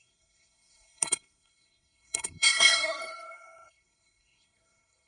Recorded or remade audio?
remade